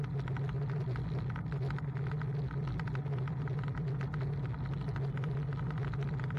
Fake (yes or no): no